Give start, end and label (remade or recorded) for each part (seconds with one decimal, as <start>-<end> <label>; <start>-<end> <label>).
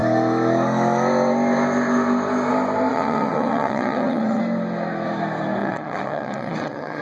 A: 0.0-2.9 recorded; 2.9-4.4 remade; 4.4-5.6 recorded; 5.6-7.0 remade